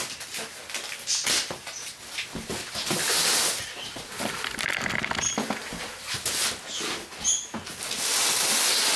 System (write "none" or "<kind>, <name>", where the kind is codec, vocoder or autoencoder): none